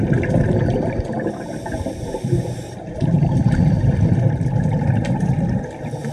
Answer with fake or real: real